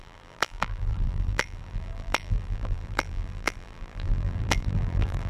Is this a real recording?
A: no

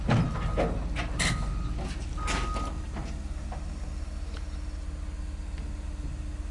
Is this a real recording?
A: yes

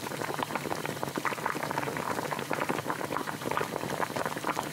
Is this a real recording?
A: no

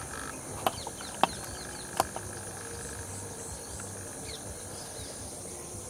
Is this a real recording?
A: yes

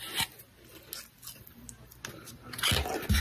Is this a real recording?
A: yes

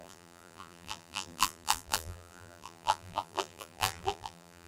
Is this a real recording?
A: no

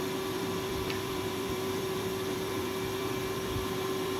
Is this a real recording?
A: no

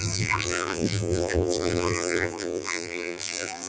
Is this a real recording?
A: no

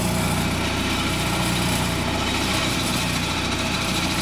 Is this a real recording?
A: no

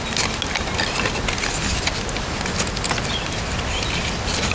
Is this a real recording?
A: yes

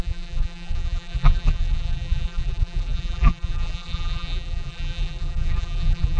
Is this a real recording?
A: no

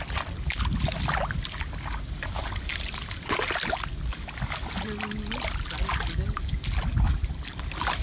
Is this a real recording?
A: yes